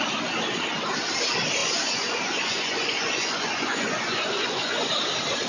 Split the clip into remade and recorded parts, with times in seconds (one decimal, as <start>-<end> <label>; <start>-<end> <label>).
0.0-1.6 recorded; 1.6-4.9 remade; 4.9-5.5 recorded